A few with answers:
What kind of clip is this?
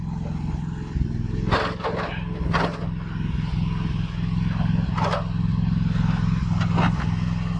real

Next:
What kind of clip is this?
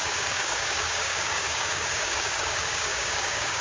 fake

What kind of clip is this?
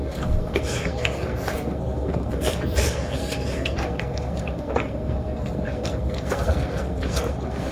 fake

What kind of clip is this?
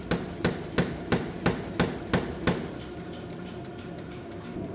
real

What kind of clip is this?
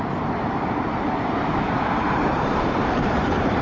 fake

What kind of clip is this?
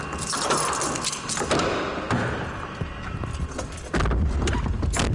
real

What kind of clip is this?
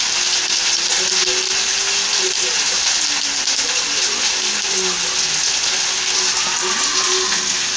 real